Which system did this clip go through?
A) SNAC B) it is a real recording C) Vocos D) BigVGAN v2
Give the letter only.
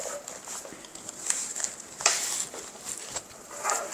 B